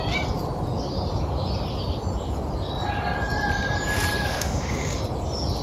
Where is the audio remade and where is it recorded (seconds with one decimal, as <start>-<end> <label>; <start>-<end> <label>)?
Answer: 0.0-4.3 recorded; 4.3-5.0 remade; 5.0-5.6 recorded